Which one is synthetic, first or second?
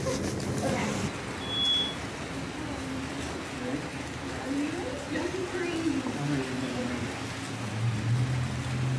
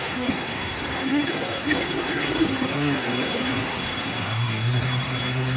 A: second